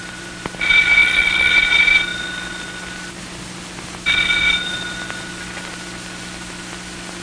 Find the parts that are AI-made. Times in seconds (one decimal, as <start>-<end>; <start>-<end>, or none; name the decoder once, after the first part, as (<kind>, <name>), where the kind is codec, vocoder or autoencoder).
1.0-1.5 (vocoder, Vocos)